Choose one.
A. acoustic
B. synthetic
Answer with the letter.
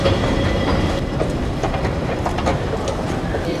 B